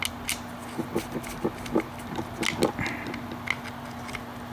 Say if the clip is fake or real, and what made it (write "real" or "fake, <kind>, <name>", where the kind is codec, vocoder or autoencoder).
real